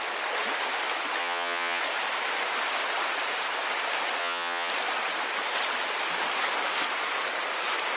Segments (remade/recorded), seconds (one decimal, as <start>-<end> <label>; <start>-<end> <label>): 0.0-1.2 recorded; 1.2-1.8 remade; 1.8-4.2 recorded; 4.2-4.7 remade; 4.7-8.0 recorded

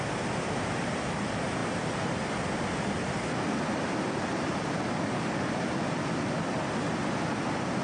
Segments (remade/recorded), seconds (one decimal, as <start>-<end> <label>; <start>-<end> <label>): 0.0-7.8 recorded

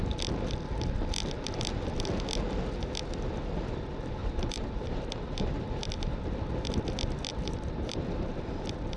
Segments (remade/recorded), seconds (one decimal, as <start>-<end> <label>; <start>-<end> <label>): 0.0-4.2 recorded; 4.2-6.2 remade; 6.2-7.3 recorded; 7.3-8.6 remade; 8.6-9.0 recorded

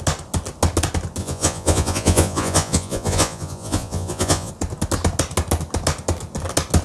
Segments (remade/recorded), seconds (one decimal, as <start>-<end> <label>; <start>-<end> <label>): 0.0-1.2 recorded; 1.2-4.5 remade; 4.5-6.8 recorded

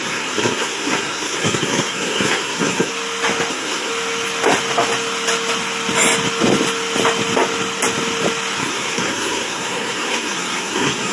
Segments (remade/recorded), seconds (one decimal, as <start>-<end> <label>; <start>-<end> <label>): 0.0-2.9 remade; 2.9-3.5 recorded; 3.5-3.9 remade; 3.9-8.6 recorded; 8.6-11.1 remade

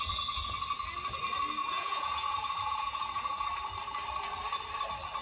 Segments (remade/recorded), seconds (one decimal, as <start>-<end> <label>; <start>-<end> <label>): 0.0-1.6 recorded; 1.6-3.5 remade; 3.5-5.2 recorded

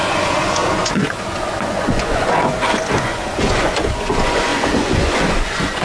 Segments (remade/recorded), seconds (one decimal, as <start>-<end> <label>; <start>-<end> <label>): 0.0-5.8 remade